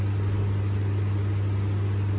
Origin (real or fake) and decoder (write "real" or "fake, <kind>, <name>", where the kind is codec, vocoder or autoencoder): real